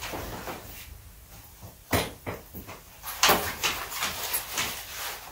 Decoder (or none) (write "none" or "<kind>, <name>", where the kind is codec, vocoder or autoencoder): none